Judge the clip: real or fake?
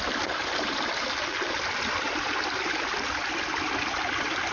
real